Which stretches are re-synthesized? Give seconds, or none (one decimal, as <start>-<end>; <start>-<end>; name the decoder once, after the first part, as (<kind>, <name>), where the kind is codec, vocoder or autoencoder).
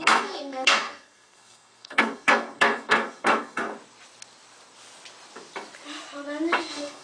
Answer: 0.0-3.7 (codec, SNAC); 6.6-7.0